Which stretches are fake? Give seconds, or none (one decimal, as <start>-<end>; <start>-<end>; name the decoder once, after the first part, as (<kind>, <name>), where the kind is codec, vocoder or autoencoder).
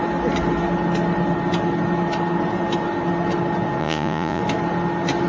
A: 3.8-4.4 (vocoder, Vocos)